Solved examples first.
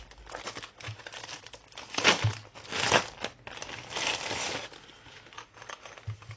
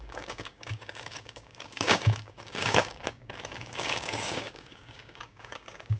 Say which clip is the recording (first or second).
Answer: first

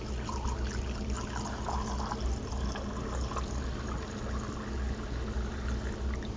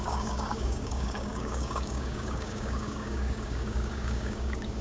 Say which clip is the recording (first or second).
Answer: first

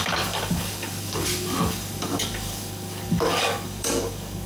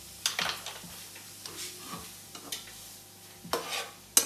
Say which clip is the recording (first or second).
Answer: second